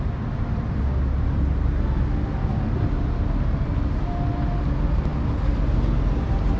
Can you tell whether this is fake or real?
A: real